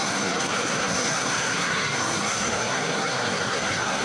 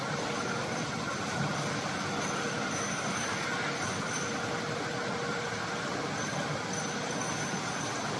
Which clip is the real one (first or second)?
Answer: second